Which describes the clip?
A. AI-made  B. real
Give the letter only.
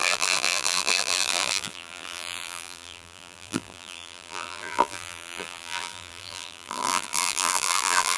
A